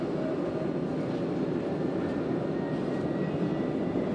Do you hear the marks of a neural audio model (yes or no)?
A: no